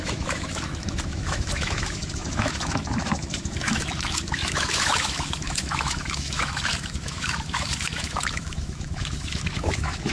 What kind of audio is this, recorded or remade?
remade